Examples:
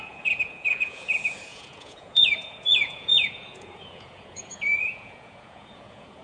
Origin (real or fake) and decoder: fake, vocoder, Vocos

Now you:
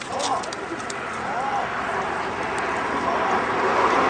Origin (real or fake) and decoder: real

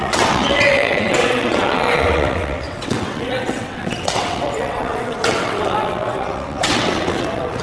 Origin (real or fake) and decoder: fake, vocoder, WaveNeXt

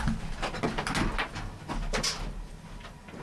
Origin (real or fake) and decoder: real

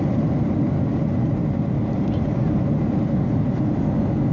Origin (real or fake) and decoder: real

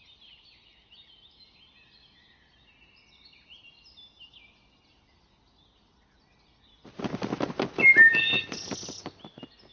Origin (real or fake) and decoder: real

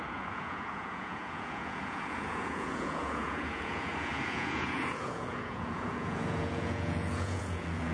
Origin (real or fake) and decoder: fake, vocoder, Vocos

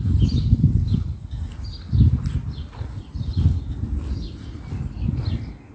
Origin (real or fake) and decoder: real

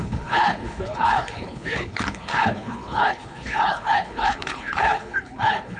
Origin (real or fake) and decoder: fake, codec, HILCodec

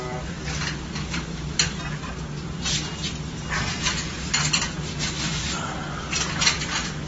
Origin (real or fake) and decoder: real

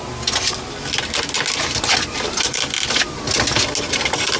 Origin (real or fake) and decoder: real